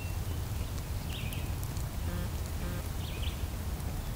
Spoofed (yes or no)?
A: no